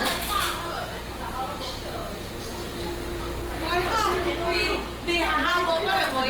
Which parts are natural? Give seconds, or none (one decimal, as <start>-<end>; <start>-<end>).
0.0-3.8; 4.3-6.3